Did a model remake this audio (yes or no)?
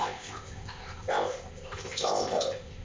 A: yes